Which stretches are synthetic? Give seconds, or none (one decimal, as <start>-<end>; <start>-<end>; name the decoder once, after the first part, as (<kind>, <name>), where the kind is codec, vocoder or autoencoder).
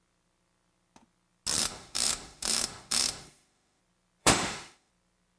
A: 1.6-3.8 (autoencoder, DAC-VAE); 4.2-4.9